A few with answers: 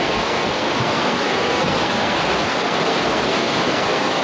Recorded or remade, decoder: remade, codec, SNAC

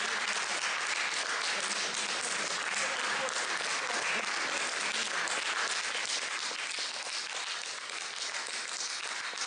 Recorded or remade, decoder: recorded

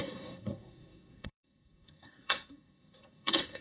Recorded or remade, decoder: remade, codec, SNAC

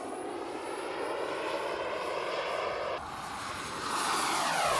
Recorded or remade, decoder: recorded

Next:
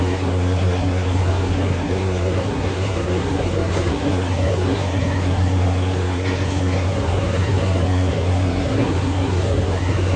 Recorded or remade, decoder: remade, codec, SNAC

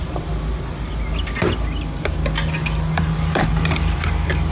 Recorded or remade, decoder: recorded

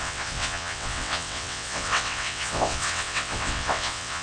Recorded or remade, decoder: remade, vocoder, WaveNeXt